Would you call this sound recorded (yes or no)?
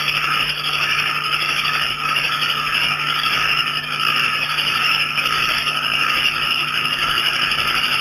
no